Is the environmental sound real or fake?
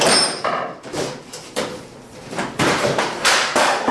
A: fake